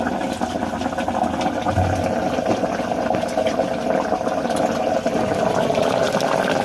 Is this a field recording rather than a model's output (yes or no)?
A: yes